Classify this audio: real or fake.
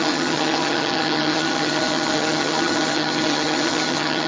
fake